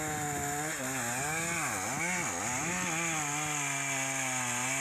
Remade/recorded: recorded